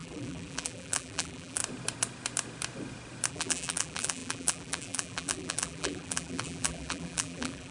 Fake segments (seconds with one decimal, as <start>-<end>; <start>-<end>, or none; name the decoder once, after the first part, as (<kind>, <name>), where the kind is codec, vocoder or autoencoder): 0.0-1.6 (vocoder, BigVGAN v2); 3.3-7.7